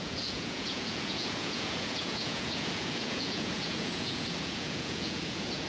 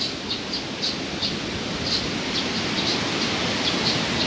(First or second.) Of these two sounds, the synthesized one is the first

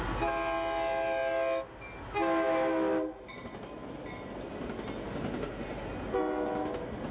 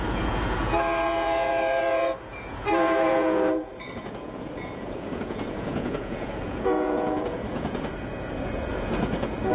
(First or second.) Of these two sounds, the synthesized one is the second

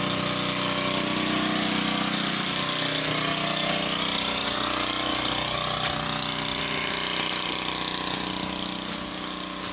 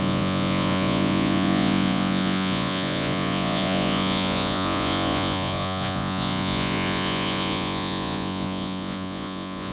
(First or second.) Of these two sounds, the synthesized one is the second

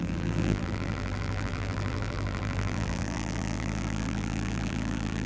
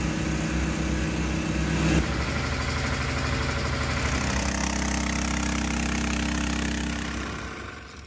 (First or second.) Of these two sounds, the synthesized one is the first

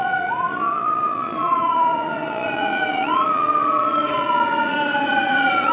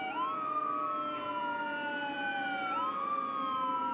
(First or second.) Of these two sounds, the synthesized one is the first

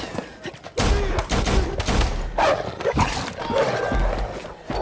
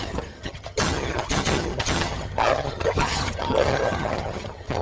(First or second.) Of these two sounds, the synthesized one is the second